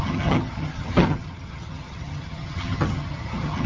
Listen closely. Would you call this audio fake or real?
fake